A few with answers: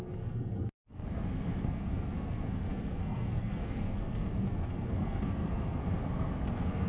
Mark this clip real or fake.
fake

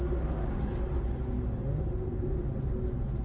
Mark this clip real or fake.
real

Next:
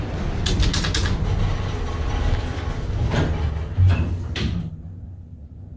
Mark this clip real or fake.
real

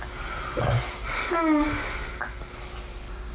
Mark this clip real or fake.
real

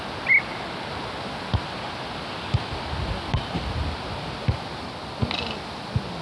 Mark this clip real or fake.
real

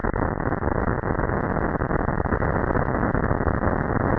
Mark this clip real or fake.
real